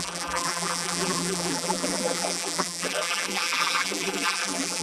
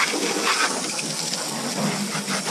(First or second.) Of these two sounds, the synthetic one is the first